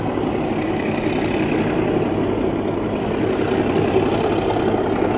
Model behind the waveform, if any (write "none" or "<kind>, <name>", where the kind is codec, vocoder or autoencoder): none